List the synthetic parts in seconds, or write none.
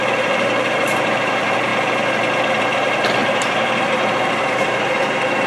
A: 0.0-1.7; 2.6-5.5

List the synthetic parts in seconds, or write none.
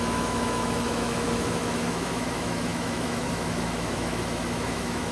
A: 0.0-5.1